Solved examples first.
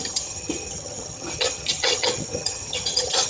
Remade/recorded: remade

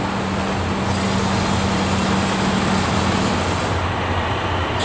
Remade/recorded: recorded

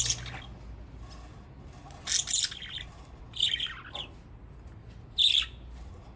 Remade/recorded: recorded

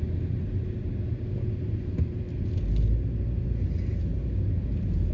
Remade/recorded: recorded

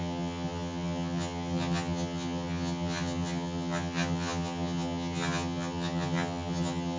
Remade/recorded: remade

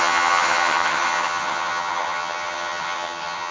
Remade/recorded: remade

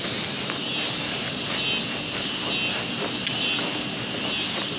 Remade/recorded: recorded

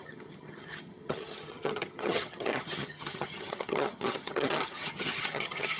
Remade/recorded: remade